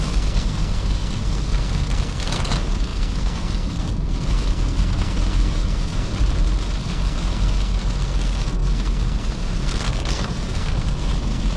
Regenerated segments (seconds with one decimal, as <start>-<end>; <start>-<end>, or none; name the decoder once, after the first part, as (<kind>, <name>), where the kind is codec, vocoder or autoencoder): 0.0-6.1 (codec, SNAC); 6.8-11.6